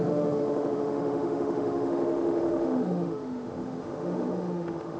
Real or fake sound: fake